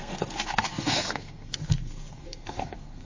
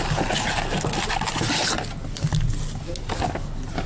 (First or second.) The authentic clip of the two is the second